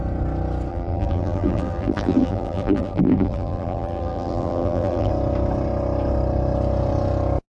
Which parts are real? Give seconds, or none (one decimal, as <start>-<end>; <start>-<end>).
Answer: 0.0-0.7; 5.1-7.5